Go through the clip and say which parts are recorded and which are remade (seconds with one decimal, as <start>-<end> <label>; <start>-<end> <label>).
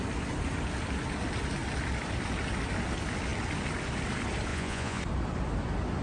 0.0-4.5 recorded; 4.5-5.0 remade; 5.0-6.0 recorded